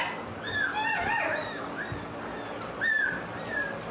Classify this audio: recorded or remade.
recorded